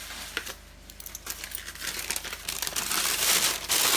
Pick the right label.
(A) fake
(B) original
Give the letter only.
B